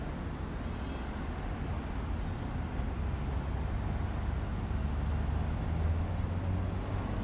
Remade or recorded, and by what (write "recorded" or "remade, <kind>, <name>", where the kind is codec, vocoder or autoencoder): recorded